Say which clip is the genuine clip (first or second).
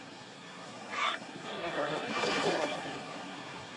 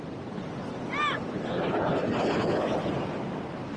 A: second